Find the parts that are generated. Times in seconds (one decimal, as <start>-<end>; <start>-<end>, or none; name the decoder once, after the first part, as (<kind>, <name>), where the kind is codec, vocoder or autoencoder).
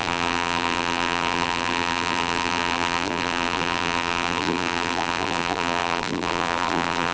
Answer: 0.0-7.1 (vocoder, BigVGAN v2)